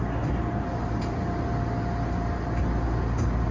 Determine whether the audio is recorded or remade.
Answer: recorded